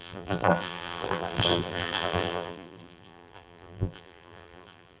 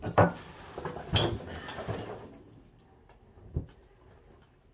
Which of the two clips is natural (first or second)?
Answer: second